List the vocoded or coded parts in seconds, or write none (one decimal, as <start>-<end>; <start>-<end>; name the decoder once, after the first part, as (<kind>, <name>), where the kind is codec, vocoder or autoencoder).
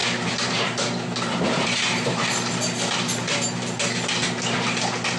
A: 0.0-2.2 (vocoder, BigVGAN v2)